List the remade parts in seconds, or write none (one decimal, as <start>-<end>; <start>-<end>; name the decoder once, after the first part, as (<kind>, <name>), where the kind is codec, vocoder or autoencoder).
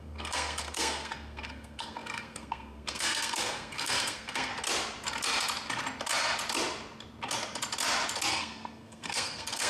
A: 0.0-4.5 (codec, SNAC); 8.3-9.7